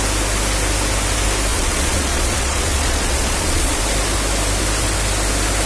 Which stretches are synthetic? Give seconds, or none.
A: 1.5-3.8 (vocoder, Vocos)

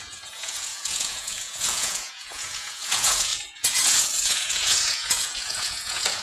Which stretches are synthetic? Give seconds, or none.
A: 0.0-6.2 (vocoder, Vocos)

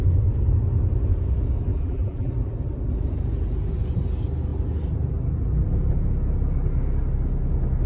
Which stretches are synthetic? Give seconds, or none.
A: 1.7-2.3 (vocoder, BigVGAN v2)

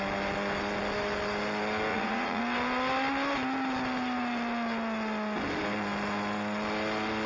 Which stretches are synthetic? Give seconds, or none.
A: 1.9-2.4 (vocoder, Vocos)

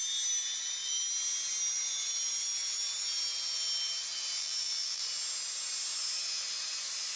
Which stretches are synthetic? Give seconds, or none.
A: 4.4-5.0 (vocoder, BigVGAN v2)